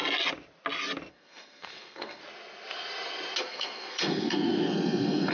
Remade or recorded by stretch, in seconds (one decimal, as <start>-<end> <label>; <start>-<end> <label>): 0.0-1.1 recorded; 1.1-2.2 remade; 2.2-3.4 recorded; 3.4-5.3 remade